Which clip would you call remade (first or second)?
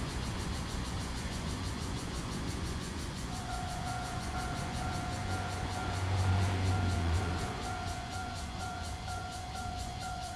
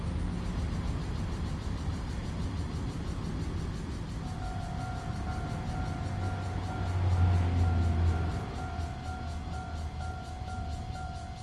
first